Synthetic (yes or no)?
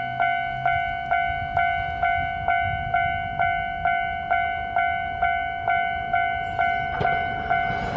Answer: no